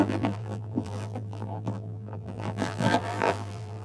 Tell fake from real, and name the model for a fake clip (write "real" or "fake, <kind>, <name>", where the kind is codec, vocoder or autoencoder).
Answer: fake, vocoder, BigVGAN v2